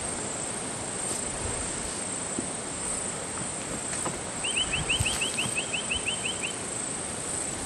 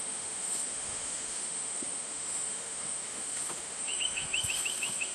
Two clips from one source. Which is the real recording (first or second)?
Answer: first